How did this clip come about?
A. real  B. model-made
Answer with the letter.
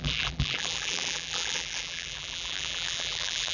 B